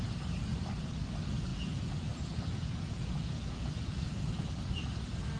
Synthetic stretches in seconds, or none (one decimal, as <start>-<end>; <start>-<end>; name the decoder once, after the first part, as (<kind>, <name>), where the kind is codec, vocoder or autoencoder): 1.5-4.7 (vocoder, Vocos)